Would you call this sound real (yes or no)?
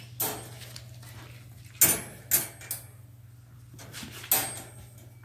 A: yes